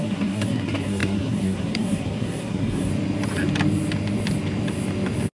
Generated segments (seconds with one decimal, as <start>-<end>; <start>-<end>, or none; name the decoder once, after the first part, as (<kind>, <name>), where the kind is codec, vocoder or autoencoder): 0.0-2.9 (codec, SNAC)